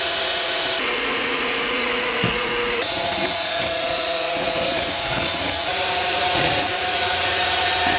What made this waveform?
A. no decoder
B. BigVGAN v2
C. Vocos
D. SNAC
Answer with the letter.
C